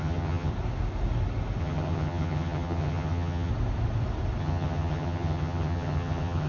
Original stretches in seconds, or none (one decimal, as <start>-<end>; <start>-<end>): 0.5-1.6; 3.5-4.4